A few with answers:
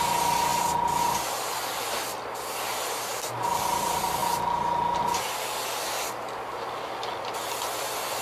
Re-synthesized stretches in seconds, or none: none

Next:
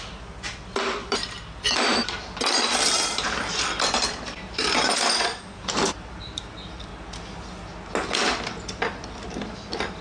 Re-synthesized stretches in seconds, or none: 0.0-6.9; 8.5-10.0

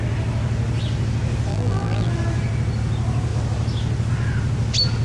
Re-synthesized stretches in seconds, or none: 1.5-2.1

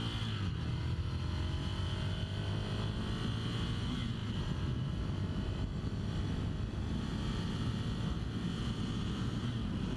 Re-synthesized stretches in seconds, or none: 4.2-5.1; 7.1-7.7

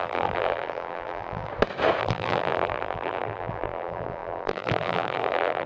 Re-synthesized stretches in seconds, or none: 0.0-1.5; 2.0-5.7

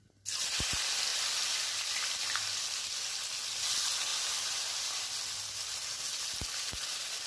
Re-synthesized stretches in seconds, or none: 1.1-2.6; 4.1-4.8

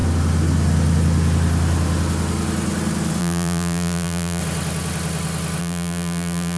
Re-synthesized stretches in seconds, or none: 3.2-4.4; 5.6-6.6